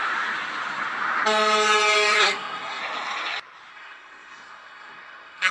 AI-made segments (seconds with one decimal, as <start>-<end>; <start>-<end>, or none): 2.1-2.8; 3.7-5.5